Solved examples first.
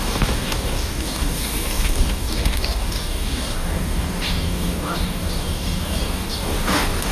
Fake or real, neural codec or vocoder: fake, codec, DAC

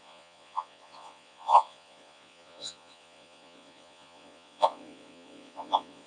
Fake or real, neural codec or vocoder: fake, vocoder, Vocos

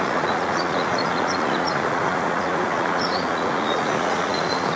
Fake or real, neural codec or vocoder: fake, vocoder, Vocos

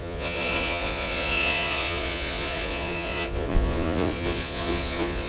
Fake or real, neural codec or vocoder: fake, vocoder, Vocos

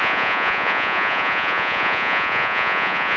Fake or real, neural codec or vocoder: fake, vocoder, Vocos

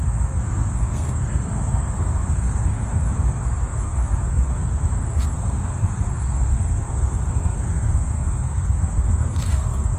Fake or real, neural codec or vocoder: fake, codec, SNAC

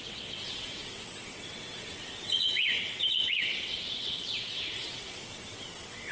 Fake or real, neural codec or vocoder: fake, vocoder, WaveNeXt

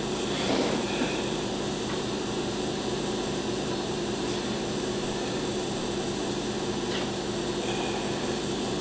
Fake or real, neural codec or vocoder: fake, vocoder, BigVGAN v2